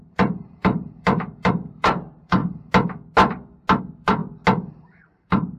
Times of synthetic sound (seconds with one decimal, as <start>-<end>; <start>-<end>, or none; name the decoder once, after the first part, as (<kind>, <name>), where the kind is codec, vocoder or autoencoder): 0.0-2.4 (vocoder, BigVGAN v2); 3.8-4.2; 4.7-5.6